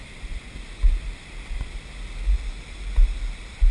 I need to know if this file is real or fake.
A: real